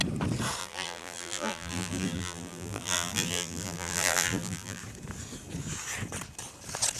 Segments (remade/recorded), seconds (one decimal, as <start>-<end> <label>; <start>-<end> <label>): 0.0-0.6 recorded; 0.6-4.8 remade; 4.8-7.0 recorded